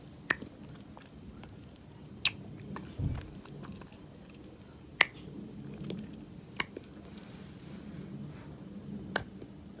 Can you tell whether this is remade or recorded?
recorded